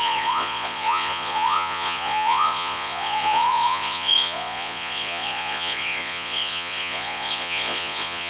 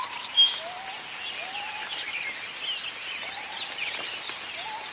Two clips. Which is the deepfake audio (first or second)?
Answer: first